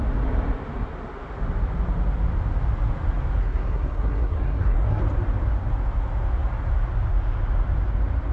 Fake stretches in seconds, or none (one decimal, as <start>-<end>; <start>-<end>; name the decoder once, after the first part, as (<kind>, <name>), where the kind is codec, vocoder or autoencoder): 3.4-5.0 (codec, SNAC)